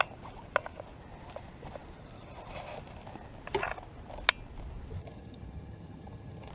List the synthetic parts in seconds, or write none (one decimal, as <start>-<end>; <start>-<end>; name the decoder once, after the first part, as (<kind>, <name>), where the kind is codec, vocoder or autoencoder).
5.0-6.5 (vocoder, HiFi-GAN)